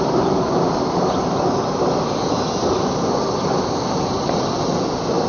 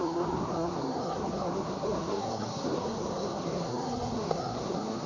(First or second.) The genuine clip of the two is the first